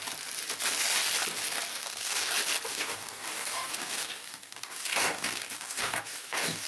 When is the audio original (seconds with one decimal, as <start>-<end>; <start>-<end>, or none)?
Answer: 0.0-1.7; 2.3-2.7